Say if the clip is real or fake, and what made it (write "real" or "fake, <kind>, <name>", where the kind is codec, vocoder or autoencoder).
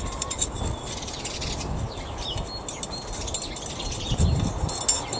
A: real